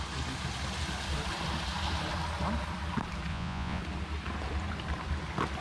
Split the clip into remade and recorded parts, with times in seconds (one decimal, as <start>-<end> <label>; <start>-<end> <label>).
0.0-3.3 recorded; 3.3-3.8 remade; 3.8-5.6 recorded